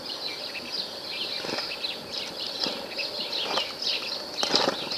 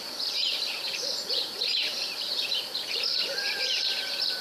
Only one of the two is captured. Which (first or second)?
first